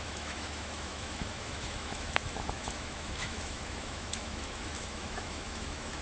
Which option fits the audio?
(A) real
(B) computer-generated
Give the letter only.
B